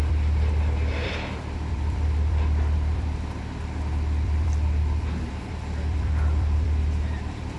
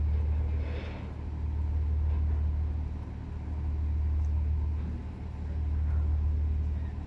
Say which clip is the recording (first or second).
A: second